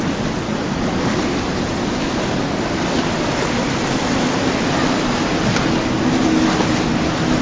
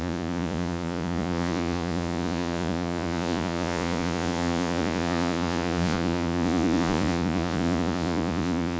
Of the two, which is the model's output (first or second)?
second